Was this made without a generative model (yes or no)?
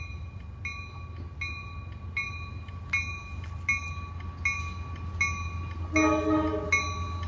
yes